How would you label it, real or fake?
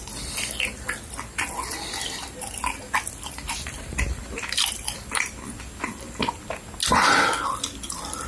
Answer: real